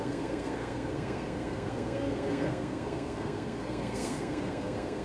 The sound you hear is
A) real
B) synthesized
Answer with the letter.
B